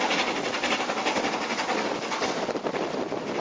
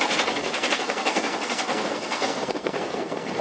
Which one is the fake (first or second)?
second